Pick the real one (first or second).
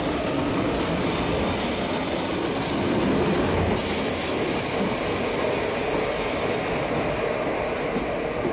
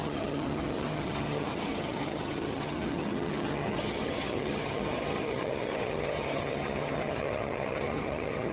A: first